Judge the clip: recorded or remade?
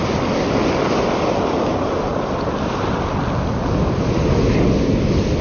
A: recorded